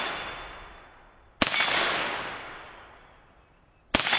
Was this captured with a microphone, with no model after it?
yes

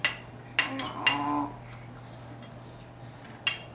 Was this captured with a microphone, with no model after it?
yes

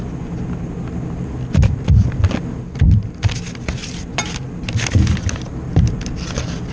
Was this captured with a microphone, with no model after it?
yes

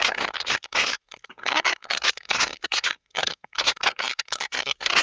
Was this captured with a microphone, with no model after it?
no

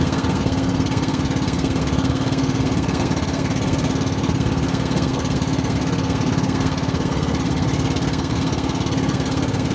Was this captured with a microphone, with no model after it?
no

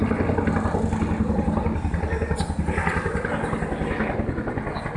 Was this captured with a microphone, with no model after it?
yes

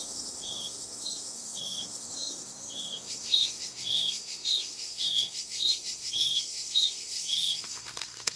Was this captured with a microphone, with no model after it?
no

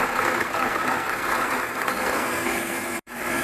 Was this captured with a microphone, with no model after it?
no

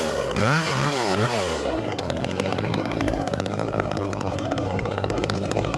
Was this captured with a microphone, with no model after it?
no